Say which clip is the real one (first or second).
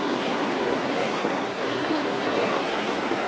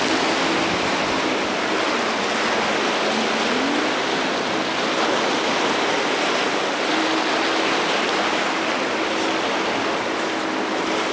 second